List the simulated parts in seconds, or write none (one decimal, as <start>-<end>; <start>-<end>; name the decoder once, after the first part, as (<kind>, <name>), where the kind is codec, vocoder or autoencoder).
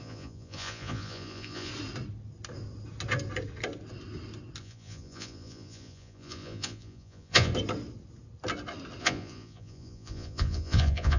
0.0-1.7 (vocoder, Vocos); 4.6-7.5; 9.0-11.2